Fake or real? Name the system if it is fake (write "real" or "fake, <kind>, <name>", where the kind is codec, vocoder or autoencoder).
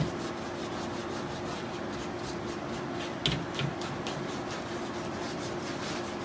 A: real